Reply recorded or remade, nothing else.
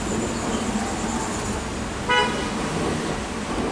recorded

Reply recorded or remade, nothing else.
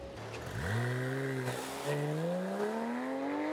recorded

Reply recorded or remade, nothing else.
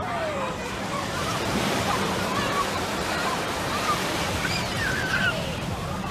remade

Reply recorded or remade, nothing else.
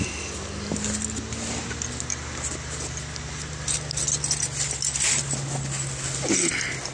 recorded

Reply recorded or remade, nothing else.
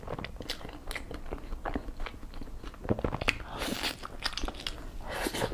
recorded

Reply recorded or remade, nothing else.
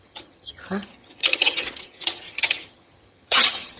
remade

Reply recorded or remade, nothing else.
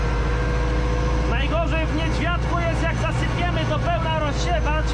recorded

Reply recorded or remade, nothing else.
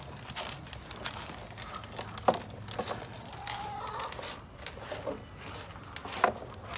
recorded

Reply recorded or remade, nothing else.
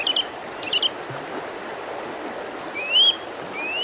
recorded